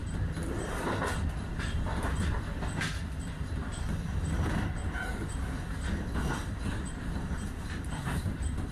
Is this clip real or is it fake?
real